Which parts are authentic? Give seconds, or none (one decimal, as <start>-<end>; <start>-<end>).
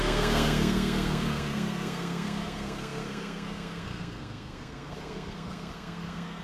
none